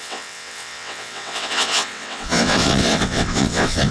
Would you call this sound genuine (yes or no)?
no